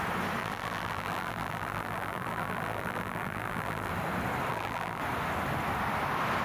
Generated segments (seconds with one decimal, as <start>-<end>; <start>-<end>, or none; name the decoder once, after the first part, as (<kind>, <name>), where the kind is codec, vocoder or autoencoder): 0.4-3.9 (vocoder, BigVGAN v2); 4.5-5.0